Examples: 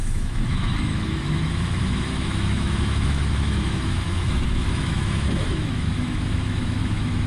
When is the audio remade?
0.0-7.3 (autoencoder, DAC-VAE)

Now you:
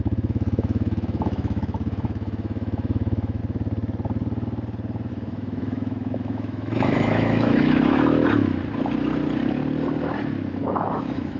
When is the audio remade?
0.0-3.4 (autoencoder, DAC-VAE); 5.1-8.2; 10.6-11.4

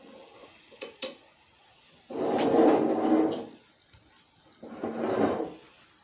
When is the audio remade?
0.4-1.8 (vocoder, Vocos)

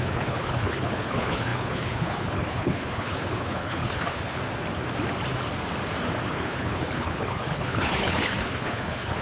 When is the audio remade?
0.0-4.4 (codec, HILCodec); 6.3-9.2

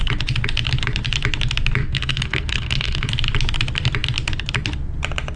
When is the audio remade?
1.8-3.1 (codec, SNAC)